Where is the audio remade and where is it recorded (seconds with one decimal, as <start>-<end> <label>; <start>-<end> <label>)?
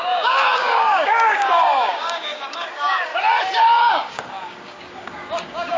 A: 0.0-3.1 remade; 3.1-3.9 recorded; 3.9-5.8 remade